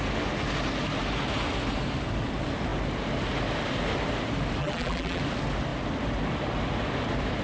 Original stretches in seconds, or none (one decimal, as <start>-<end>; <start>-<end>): 0.0-4.6; 5.2-7.4